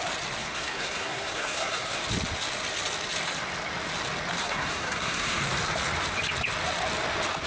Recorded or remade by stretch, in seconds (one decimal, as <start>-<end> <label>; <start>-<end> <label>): 0.0-0.4 recorded; 0.4-2.0 remade; 2.0-4.4 recorded; 4.4-5.4 remade; 5.4-7.5 recorded